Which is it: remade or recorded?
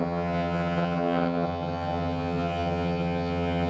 remade